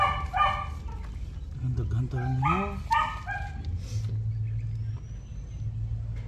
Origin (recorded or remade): recorded